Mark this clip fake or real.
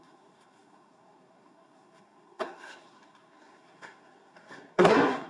fake